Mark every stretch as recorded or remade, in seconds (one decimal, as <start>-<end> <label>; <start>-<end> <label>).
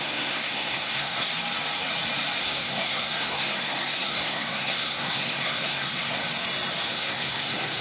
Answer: 0.0-1.3 remade; 1.3-2.4 recorded; 2.4-6.2 remade; 6.2-6.9 recorded; 6.9-7.8 remade